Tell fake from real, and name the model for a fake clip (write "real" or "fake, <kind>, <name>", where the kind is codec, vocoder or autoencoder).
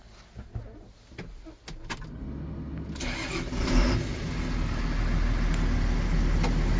real